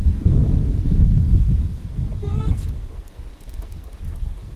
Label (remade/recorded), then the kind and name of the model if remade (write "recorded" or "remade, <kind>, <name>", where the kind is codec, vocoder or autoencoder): remade, codec, SNAC